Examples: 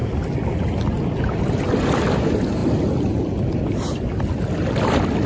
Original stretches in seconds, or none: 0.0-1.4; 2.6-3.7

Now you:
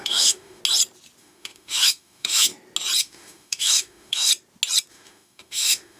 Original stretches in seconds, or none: 0.6-1.2; 2.5-3.0; 4.3-4.9

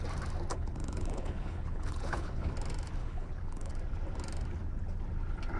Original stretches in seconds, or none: 0.0-0.5; 2.5-3.0; 3.7-5.6

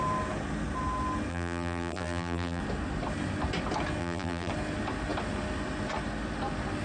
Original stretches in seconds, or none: 0.0-1.3; 2.6-4.0; 4.5-6.8